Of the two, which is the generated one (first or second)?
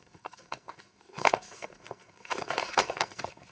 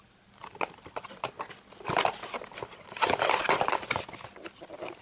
first